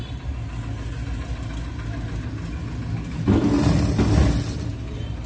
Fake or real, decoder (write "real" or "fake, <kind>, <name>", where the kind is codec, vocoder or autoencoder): real